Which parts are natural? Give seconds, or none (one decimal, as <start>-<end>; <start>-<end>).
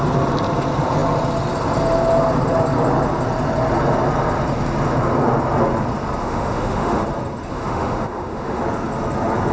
0.0-6.2; 7.0-7.5; 8.6-9.5